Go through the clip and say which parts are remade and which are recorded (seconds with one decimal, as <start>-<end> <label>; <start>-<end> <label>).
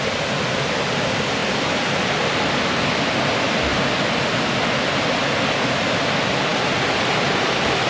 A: 0.0-7.9 recorded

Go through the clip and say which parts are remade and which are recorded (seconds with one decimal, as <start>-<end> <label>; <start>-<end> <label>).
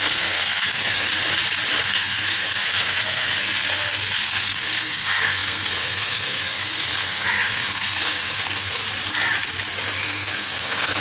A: 0.0-1.1 remade; 1.1-1.8 recorded; 1.8-8.8 remade; 8.8-10.0 recorded; 10.0-11.0 remade